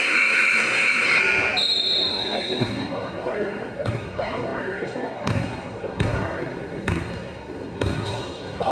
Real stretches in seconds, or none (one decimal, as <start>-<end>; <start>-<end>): 1.2-2.1